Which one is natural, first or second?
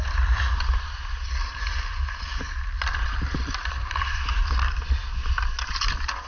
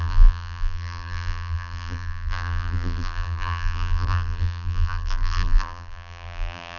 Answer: first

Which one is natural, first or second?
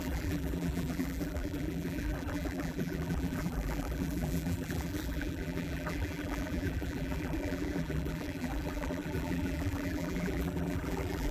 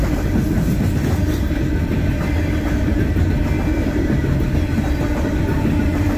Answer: second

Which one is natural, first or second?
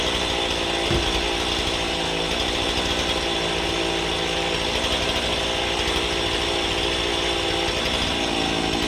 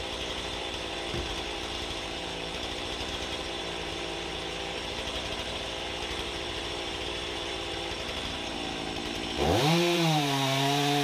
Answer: first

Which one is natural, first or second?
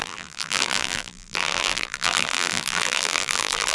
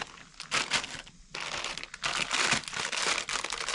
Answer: second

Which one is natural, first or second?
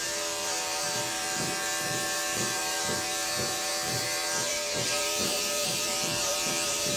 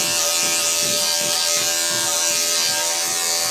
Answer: second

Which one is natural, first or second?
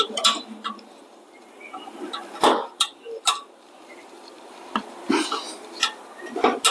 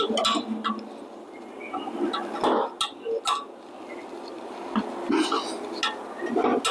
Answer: second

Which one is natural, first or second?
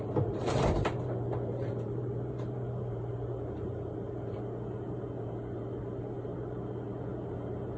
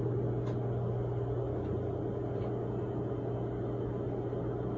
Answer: second